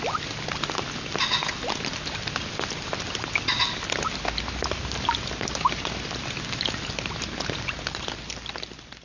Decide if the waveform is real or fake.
real